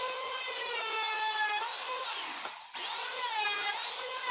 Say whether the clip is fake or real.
real